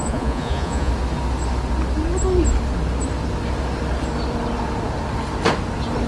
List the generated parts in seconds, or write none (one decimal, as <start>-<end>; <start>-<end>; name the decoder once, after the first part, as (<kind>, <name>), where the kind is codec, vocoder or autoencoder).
0.0-0.9 (vocoder, Vocos)